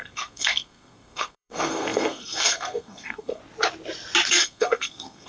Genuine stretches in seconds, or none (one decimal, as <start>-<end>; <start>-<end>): 3.4-4.3